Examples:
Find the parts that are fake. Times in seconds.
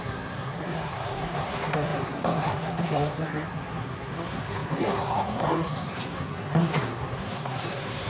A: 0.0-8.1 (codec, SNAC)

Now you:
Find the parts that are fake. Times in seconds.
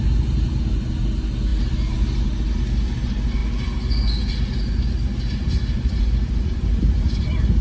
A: none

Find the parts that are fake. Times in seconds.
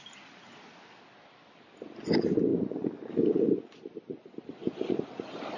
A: 2.5-3.6 (vocoder, BigVGAN v2); 4.6-5.1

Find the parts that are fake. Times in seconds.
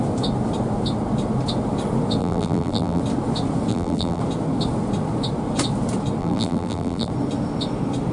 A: 2.2-3.0 (vocoder, BigVGAN v2); 3.7-4.2; 6.2-7.1